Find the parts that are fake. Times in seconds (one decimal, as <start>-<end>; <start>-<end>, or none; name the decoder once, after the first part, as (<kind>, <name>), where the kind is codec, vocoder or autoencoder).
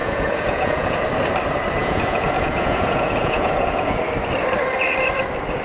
0.0-1.0 (vocoder, Vocos); 1.8-4.0